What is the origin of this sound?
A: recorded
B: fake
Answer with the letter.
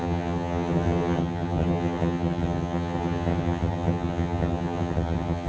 B